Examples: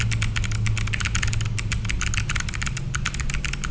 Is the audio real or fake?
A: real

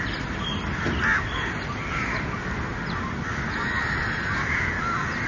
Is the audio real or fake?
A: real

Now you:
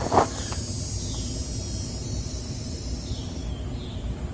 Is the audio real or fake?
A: real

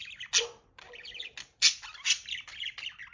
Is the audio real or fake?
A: real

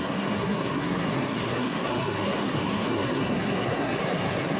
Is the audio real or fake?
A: fake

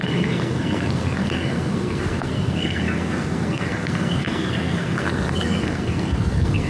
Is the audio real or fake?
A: fake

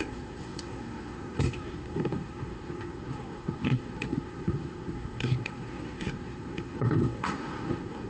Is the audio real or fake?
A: fake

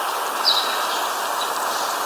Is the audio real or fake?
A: real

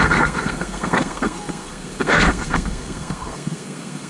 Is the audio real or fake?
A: fake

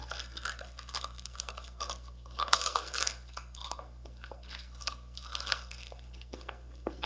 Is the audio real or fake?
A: fake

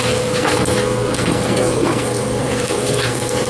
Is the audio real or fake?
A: fake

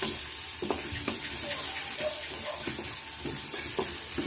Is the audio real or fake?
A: real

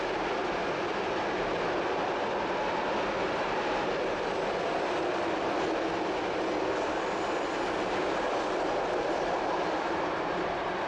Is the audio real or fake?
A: real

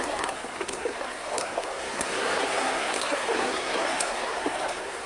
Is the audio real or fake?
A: fake